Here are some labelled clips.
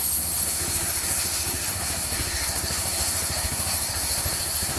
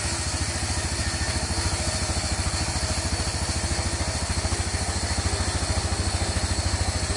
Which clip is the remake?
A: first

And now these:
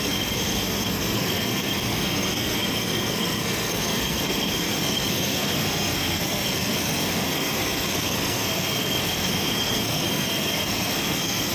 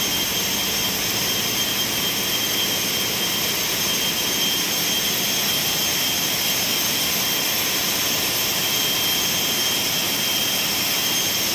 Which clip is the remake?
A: first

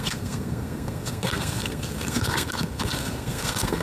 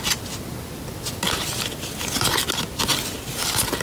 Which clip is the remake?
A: first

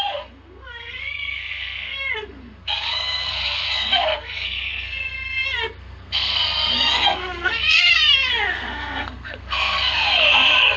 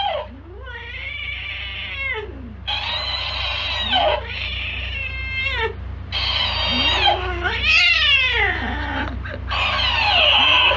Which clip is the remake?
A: first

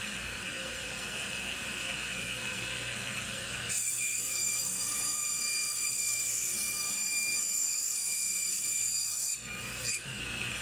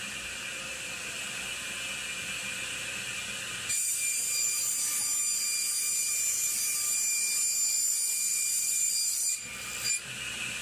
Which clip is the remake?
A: first